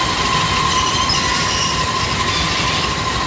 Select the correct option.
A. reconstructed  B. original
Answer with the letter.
B